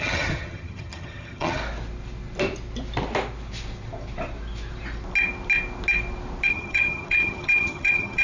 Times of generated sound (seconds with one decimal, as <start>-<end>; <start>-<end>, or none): 0.0-1.6; 6.5-8.2